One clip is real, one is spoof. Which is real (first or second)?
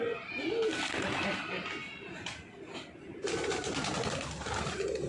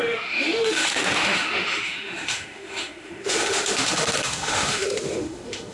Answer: first